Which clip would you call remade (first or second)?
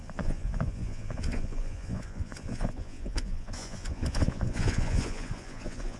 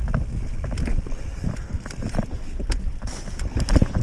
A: first